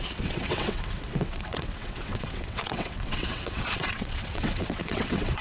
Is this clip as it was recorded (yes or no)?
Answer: no